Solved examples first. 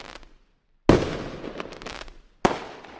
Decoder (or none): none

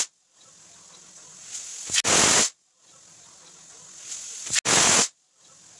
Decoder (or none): none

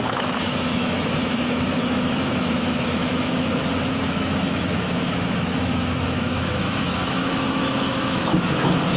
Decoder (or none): autoencoder, DAC-VAE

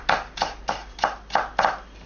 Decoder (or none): none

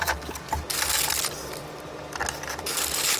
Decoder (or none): none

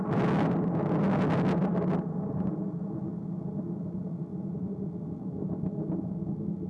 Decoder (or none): none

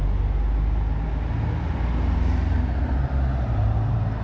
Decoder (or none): none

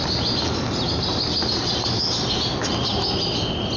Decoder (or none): none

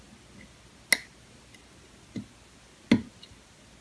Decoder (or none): none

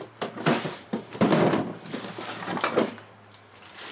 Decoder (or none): none